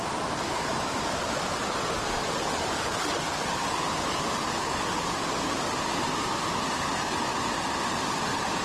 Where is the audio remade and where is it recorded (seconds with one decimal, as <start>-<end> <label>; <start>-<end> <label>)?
0.0-8.6 recorded